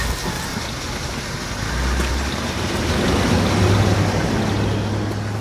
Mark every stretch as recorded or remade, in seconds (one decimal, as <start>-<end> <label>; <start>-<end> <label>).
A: 0.0-5.4 recorded